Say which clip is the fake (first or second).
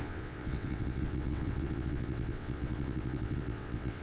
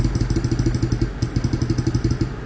first